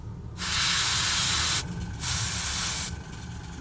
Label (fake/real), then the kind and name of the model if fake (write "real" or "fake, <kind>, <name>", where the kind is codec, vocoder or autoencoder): real